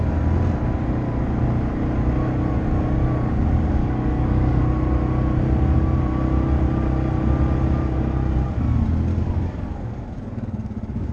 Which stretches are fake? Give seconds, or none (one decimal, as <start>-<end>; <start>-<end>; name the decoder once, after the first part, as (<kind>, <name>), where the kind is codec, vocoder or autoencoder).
3.8-4.6 (codec, DAC); 9.1-11.1